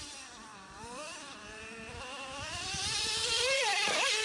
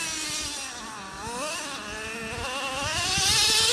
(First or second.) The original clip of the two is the second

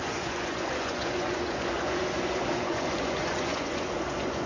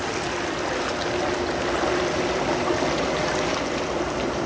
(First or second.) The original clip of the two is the second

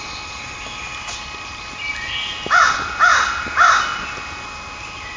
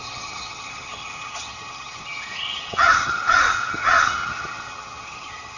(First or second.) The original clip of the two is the first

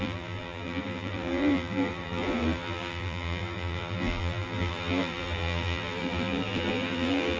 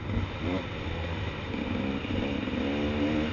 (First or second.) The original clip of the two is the second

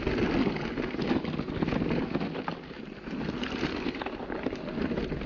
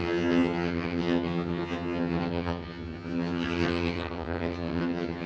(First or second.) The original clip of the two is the first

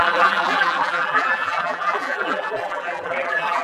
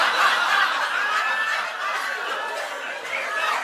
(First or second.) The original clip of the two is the second